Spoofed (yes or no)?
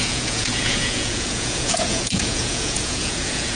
yes